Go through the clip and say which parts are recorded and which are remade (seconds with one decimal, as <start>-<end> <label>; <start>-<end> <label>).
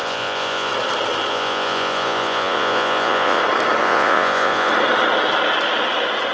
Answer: 0.0-0.7 remade; 0.7-1.3 recorded; 1.3-3.4 remade; 3.4-3.8 recorded; 3.8-4.7 remade; 4.7-6.3 recorded